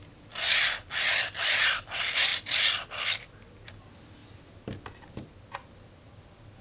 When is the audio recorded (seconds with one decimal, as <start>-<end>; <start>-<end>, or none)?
0.0-6.6